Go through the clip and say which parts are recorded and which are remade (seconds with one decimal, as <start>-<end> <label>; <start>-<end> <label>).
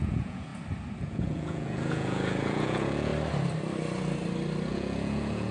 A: 0.0-0.5 remade; 0.5-1.0 recorded; 1.0-3.1 remade; 3.1-4.7 recorded; 4.7-5.5 remade